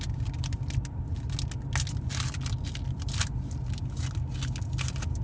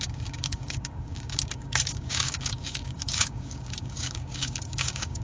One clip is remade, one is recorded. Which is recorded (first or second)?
first